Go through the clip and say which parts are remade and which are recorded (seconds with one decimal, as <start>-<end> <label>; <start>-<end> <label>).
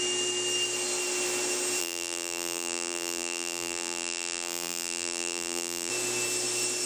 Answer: 0.0-1.8 recorded; 1.8-5.9 remade; 5.9-6.9 recorded